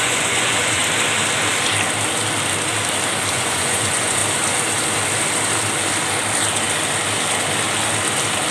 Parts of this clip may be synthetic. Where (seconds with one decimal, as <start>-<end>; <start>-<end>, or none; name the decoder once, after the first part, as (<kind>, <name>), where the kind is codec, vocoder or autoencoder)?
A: 0.0-0.8 (vocoder, Vocos); 3.3-4.2